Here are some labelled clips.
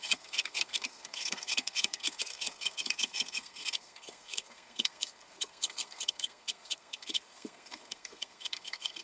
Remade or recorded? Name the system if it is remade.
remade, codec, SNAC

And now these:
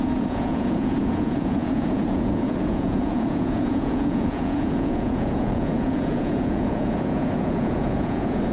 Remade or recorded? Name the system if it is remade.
remade, vocoder, Vocos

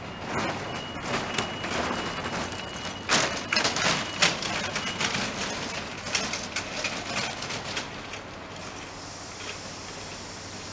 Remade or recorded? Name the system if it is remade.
recorded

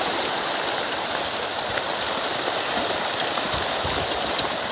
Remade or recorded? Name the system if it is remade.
recorded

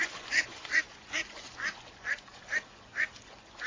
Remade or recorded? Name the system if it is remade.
remade, vocoder, Vocos